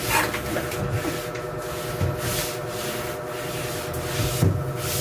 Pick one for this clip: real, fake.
real